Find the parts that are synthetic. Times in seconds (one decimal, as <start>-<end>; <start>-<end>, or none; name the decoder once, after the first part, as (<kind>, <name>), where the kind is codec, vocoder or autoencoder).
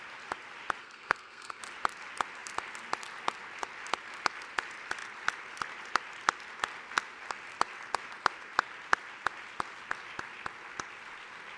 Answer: 0.8-1.6 (codec, SNAC)